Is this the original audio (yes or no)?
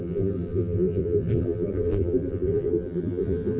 no